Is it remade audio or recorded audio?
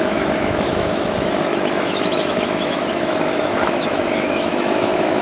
remade